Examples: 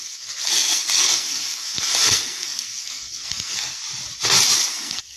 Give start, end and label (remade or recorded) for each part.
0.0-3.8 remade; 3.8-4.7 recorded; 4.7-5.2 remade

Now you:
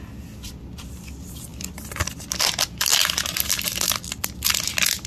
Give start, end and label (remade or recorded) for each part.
0.0-5.1 recorded

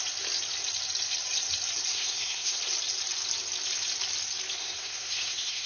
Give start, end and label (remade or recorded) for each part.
0.0-1.9 recorded; 1.9-2.6 remade; 2.6-4.6 recorded; 4.6-5.7 remade

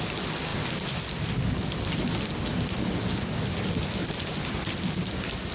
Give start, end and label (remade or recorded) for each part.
0.0-5.5 recorded

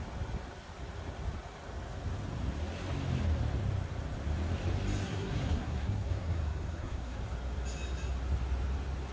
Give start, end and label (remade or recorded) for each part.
0.0-5.0 recorded; 5.0-7.2 remade; 7.2-9.1 recorded

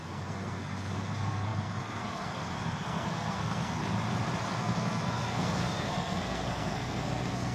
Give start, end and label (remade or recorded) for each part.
0.0-3.8 remade; 3.8-4.6 recorded; 4.6-7.5 remade

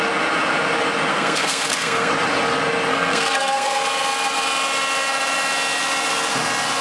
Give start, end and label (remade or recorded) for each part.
0.0-1.1 recorded; 1.1-2.1 remade; 2.1-2.9 recorded; 2.9-3.8 remade; 3.8-6.8 recorded